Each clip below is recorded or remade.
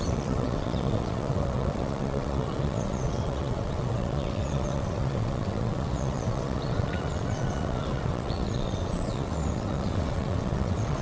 remade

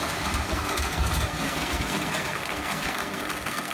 remade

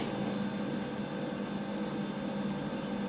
recorded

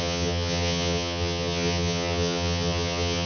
remade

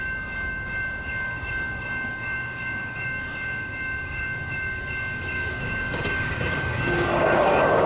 remade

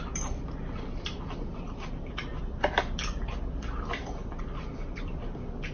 recorded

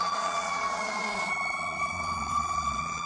remade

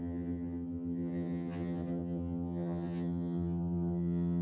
remade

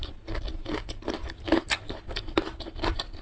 recorded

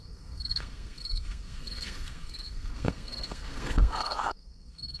remade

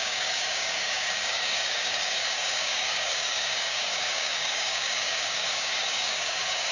remade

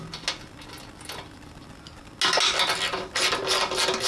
recorded